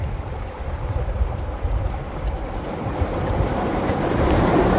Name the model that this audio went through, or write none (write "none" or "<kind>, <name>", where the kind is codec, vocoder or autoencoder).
vocoder, BigVGAN v2